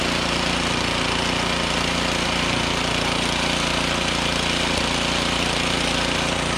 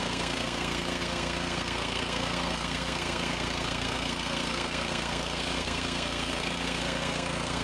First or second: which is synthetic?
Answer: second